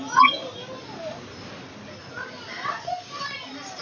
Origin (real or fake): real